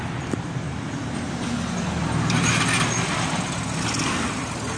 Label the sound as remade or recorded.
recorded